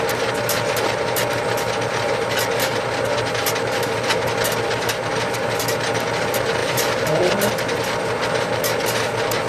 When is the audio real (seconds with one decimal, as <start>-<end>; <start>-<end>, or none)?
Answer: 0.0-6.6; 7.2-9.5